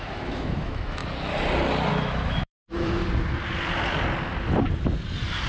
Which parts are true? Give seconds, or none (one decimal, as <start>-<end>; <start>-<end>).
1.0-1.9; 3.0-5.5